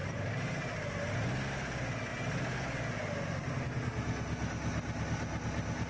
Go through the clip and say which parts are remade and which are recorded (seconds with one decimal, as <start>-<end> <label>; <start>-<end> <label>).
0.0-0.8 remade; 0.8-5.9 recorded